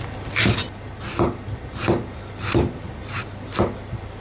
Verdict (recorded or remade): recorded